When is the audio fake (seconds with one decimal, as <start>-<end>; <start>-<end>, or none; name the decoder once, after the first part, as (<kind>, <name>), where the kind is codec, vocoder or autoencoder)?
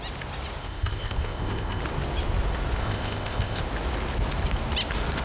0.6-1.8 (codec, ZipCodec); 2.8-3.6